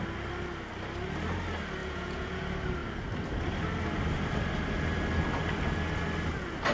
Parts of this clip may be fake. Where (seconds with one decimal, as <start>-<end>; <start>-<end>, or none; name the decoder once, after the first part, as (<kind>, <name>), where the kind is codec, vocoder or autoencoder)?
1.8-2.4 (vocoder, Vocos)